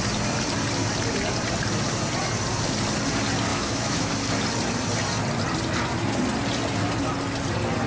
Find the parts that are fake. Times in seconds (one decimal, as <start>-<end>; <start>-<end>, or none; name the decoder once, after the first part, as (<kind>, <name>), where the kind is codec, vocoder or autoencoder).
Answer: 3.5-4.1 (autoencoder, DAC-VAE)